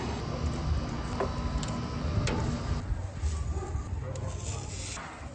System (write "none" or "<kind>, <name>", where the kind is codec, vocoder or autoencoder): none